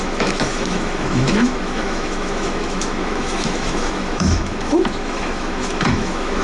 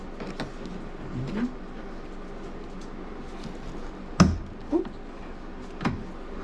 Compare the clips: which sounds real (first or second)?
second